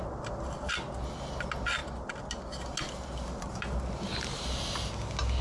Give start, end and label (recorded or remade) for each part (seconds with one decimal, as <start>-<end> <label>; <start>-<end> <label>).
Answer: 0.0-5.4 recorded